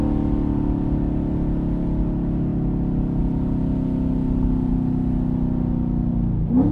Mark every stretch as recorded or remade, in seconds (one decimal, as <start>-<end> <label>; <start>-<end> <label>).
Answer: 0.0-6.7 recorded